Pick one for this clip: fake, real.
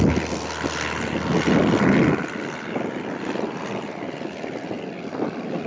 real